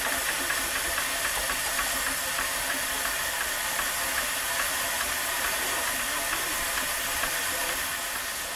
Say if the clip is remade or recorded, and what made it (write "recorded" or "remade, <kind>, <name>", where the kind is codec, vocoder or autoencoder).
recorded